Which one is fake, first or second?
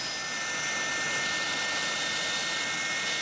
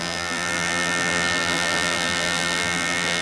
second